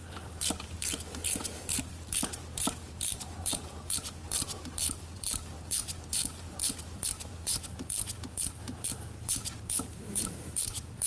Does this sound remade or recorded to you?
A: remade